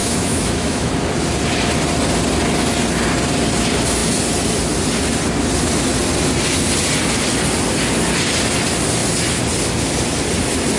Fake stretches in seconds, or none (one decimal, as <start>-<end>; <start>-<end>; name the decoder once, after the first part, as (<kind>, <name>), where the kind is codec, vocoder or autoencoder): 0.0-0.9 (autoencoder, DAC-VAE)